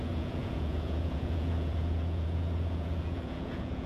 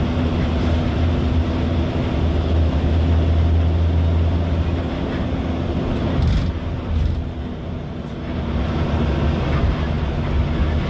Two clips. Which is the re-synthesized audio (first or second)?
first